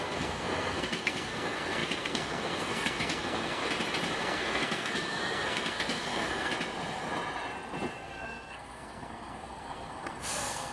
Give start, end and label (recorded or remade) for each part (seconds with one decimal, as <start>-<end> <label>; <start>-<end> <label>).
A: 0.0-3.6 remade; 3.6-4.2 recorded; 4.2-6.5 remade; 6.5-7.9 recorded; 7.9-10.7 remade